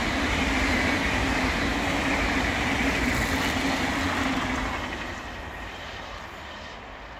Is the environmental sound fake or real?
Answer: real